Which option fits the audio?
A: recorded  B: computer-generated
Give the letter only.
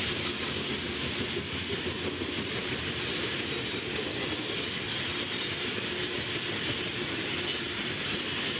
A